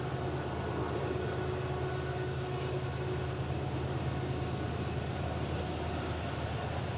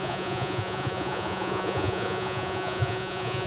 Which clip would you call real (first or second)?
first